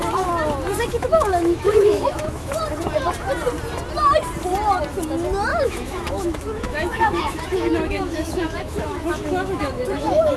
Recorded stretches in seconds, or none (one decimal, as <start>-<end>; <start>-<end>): 0.0-0.9; 2.5-5.5